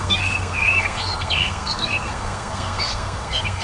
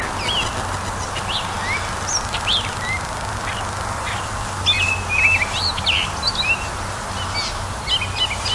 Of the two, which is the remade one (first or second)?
first